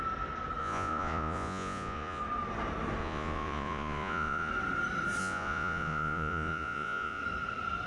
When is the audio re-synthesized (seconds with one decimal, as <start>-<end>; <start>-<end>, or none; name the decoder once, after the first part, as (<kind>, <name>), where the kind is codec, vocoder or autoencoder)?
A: 0.6-2.2 (vocoder, Vocos); 3.0-4.5; 5.2-7.2